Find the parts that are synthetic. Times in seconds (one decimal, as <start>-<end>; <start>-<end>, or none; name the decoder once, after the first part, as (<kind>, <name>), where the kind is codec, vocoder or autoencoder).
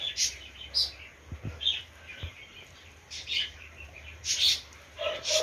2.1-5.4 (vocoder, BigVGAN v2)